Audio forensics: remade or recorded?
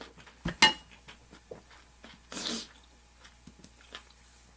recorded